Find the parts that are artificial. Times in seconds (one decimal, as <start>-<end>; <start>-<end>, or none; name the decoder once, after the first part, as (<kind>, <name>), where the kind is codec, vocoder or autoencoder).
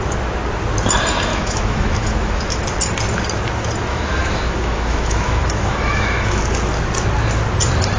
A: 1.3-2.6 (autoencoder, DAC-VAE); 3.9-6.4